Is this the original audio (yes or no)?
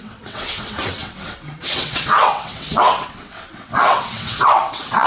no